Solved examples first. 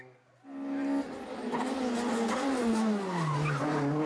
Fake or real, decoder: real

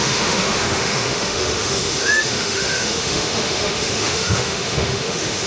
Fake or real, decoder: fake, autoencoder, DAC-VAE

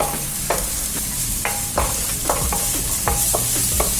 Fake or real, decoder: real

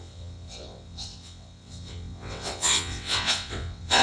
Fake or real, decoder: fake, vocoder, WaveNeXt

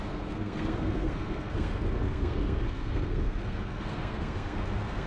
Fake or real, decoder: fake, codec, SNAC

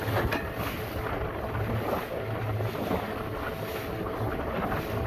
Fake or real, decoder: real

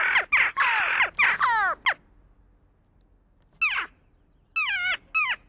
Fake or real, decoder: real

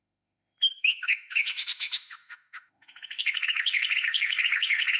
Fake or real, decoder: fake, autoencoder, DAC-VAE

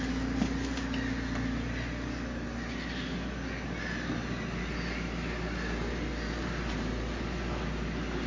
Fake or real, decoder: real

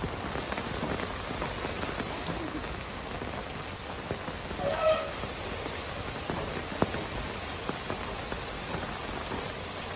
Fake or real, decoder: real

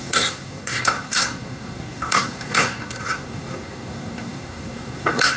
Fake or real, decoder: fake, codec, SNAC